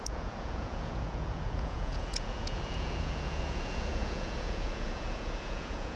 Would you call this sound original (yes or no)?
no